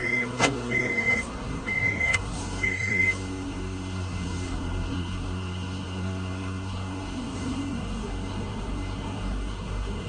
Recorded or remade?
remade